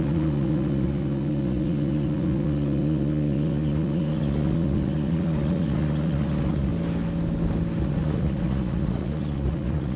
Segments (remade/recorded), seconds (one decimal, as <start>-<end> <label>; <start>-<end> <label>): 0.0-6.7 remade; 6.7-7.8 recorded; 7.8-10.0 remade